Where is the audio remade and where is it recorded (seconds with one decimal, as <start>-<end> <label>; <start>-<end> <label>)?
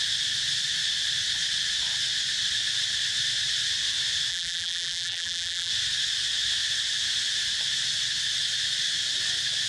0.0-4.3 recorded; 4.3-5.7 remade; 5.7-9.7 recorded